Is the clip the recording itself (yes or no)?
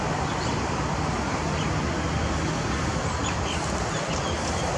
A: yes